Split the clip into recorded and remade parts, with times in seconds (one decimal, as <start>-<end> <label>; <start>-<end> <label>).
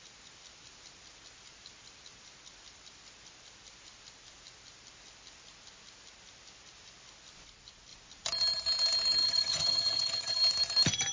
0.0-9.2 recorded; 9.2-10.4 remade; 10.4-11.1 recorded